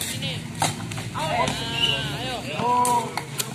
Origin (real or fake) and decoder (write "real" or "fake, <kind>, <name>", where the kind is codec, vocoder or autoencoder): real